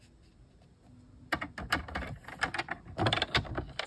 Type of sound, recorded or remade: recorded